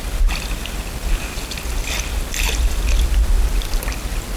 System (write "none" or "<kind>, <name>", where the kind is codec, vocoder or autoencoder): none